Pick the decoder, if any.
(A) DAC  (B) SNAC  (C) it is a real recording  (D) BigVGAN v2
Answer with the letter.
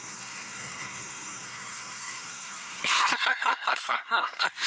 B